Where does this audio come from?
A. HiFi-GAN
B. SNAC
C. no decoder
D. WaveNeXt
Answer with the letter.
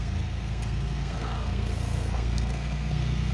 B